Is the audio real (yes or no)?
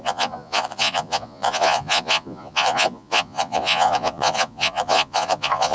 no